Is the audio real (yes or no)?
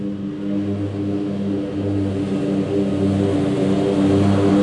yes